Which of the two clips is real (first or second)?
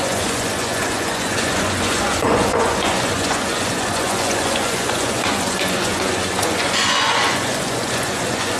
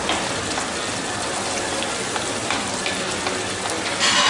second